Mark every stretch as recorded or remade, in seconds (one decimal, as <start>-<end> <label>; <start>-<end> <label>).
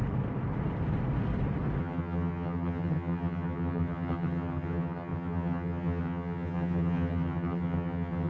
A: 0.0-1.8 recorded; 1.8-8.3 remade